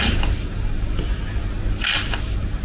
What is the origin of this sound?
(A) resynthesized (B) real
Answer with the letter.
B